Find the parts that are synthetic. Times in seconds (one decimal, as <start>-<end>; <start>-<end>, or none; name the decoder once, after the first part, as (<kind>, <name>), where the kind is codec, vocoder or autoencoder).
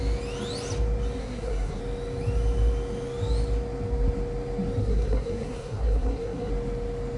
1.2-1.8 (codec, SNAC); 4.8-6.5